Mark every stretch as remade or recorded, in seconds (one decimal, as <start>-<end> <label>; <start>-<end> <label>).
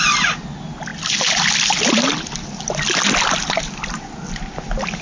0.0-5.0 recorded